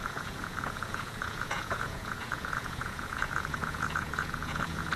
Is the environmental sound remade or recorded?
remade